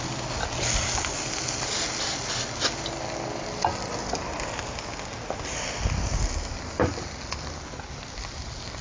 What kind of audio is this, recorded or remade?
recorded